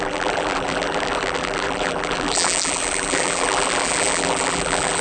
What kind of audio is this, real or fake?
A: fake